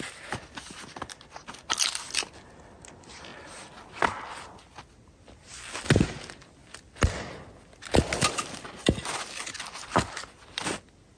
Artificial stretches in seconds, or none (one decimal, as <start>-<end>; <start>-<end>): none